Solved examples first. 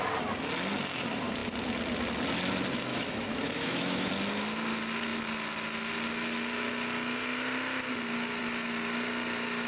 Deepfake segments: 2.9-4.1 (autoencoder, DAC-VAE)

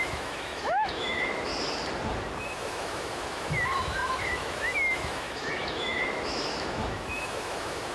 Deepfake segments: 0.0-1.5 (autoencoder, DAC-VAE); 2.4-7.9

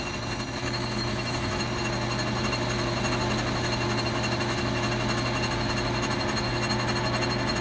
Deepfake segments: 0.6-1.6 (autoencoder, DAC-VAE)

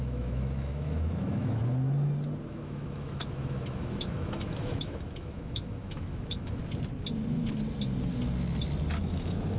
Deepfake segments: 0.0-1.6 (autoencoder, DAC-VAE); 2.5-6.6; 9.0-9.6

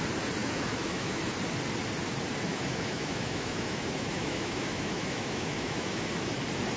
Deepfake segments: 0.4-1.2 (autoencoder, DAC-VAE); 2.5-6.1